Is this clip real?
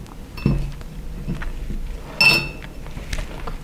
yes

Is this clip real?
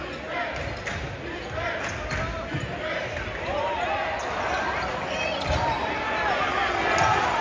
yes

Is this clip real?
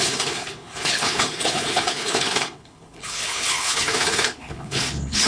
no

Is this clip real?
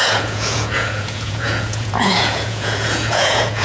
no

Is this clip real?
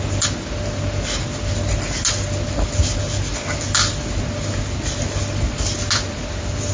yes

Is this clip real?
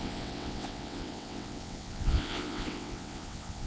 no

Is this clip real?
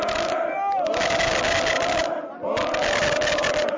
yes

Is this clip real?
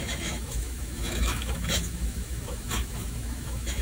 no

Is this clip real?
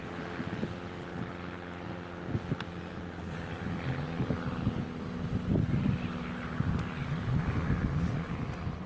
yes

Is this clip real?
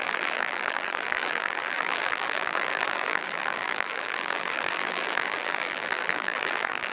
no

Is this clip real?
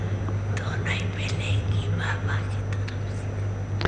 yes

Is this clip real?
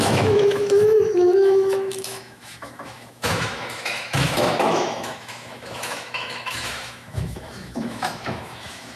no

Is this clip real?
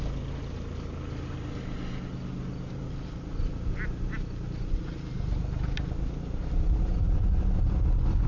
yes